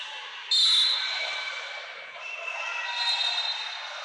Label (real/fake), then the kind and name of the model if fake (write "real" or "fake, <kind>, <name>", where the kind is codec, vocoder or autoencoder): real